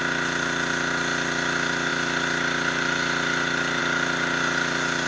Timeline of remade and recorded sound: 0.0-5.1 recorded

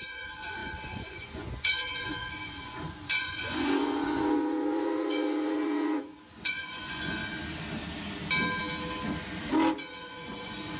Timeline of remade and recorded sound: 0.0-7.2 remade; 7.2-10.0 recorded; 10.0-10.8 remade

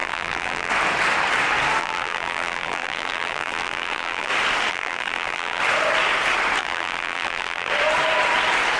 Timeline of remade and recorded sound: 0.0-0.7 remade; 0.7-1.8 recorded; 1.8-4.3 remade; 4.3-4.7 recorded; 4.7-5.6 remade; 5.6-6.6 recorded; 6.6-7.7 remade; 7.7-8.8 recorded